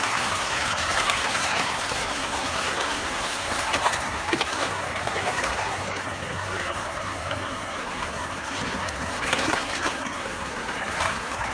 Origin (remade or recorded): remade